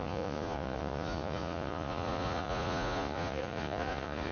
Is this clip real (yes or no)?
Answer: no